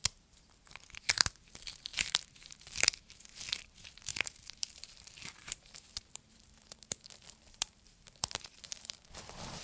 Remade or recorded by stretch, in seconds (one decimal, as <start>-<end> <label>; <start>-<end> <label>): 0.0-0.7 remade; 0.7-1.9 recorded; 1.9-3.4 remade; 3.4-4.1 recorded; 4.1-9.0 remade; 9.0-9.6 recorded